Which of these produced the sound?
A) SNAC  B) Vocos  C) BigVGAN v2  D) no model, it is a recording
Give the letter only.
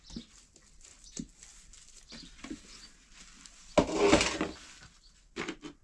D